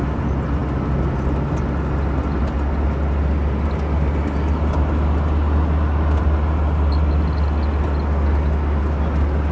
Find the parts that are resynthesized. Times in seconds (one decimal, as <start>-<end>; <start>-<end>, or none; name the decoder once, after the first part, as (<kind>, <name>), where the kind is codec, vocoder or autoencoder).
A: none